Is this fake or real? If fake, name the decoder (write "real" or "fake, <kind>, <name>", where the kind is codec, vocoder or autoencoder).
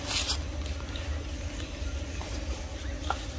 real